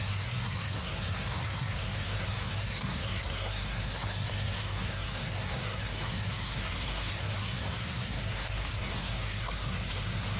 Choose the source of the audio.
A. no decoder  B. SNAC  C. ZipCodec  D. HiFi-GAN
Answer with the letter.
B